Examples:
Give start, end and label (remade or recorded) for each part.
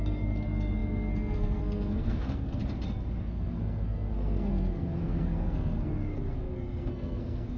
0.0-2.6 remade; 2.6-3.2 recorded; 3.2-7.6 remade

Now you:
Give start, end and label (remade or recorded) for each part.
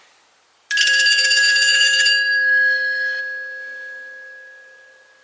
0.0-0.8 recorded; 0.8-3.2 remade; 3.2-5.2 recorded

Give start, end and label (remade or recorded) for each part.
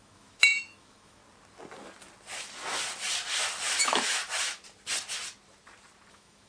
0.0-1.2 remade; 1.2-3.8 recorded; 3.8-4.2 remade; 4.2-6.1 recorded; 6.1-6.5 remade